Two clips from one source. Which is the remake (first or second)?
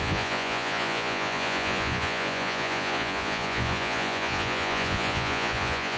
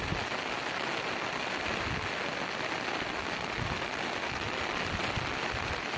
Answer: first